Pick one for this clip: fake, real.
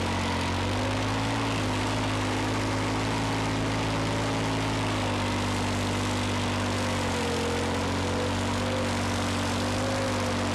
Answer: real